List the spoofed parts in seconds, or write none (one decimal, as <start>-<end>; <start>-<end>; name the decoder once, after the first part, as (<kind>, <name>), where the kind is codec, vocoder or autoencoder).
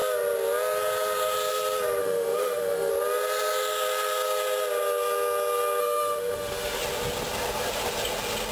2.0-2.9 (autoencoder, DAC-VAE); 5.8-6.8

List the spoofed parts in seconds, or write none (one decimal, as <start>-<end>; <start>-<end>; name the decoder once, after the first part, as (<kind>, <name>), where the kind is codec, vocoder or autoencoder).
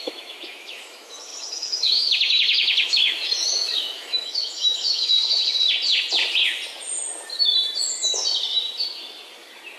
0.0-5.4 (autoencoder, DAC-VAE)